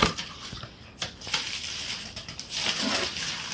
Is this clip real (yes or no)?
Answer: yes